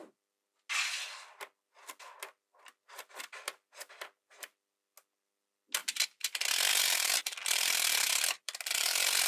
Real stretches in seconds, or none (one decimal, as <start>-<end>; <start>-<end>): 0.0-5.8